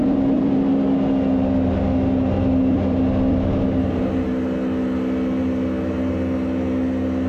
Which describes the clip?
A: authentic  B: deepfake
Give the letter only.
A